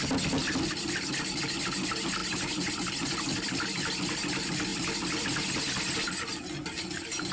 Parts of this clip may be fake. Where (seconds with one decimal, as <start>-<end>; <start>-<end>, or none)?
none